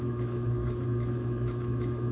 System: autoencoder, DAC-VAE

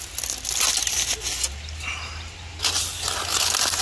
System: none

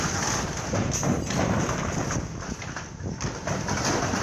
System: none